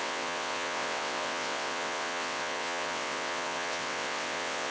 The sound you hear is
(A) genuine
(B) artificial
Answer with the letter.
B